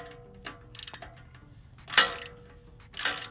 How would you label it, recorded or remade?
recorded